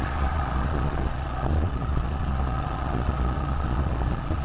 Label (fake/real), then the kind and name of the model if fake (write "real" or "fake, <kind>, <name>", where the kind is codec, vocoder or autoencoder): fake, vocoder, Vocos